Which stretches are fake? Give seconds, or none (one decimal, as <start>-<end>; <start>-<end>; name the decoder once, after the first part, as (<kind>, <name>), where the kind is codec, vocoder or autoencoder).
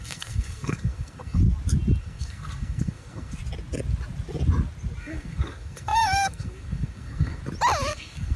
0.0-1.4 (codec, SNAC); 2.0-3.4; 5.0-7.4; 7.9-8.4